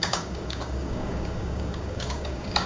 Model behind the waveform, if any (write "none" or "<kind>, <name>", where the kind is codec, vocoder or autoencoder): codec, DAC